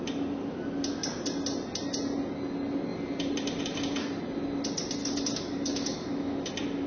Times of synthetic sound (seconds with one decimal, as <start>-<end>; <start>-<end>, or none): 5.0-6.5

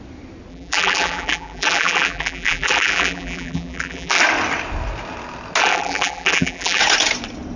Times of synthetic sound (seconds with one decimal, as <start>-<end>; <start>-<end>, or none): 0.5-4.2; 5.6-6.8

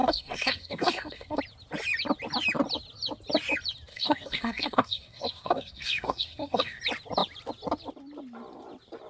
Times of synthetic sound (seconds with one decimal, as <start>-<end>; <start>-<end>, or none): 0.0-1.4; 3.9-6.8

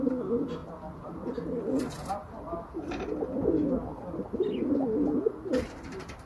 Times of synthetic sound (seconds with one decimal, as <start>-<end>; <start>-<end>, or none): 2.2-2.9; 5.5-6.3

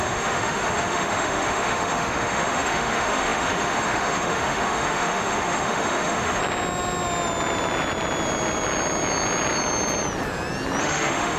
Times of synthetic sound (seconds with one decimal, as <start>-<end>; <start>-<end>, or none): 0.0-6.4; 10.8-11.4